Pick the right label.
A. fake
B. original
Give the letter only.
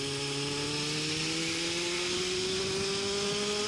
B